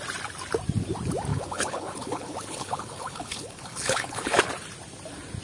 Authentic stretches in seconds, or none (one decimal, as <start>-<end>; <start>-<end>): 0.0-1.3; 4.5-5.4